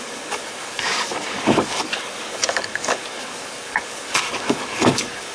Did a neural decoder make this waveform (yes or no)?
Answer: yes